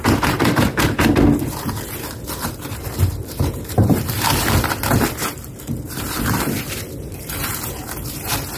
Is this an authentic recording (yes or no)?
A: no